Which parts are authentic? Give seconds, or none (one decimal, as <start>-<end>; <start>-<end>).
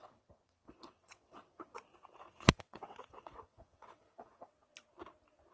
1.8-2.2; 4.5-5.5